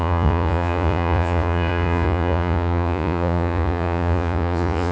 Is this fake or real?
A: fake